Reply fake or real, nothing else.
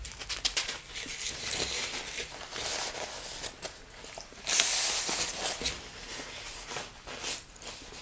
real